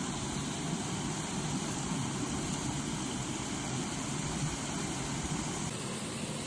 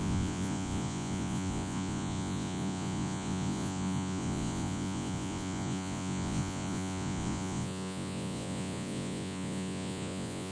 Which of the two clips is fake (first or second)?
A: second